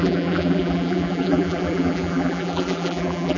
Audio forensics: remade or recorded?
remade